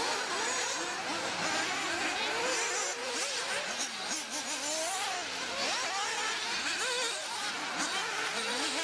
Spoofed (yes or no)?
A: no